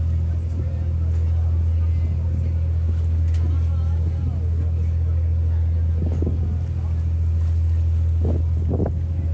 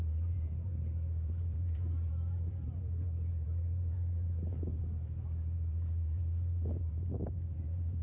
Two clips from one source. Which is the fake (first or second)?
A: second